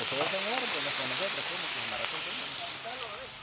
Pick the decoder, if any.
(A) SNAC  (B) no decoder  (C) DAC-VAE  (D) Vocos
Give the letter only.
B